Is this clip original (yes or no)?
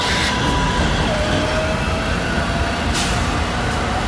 yes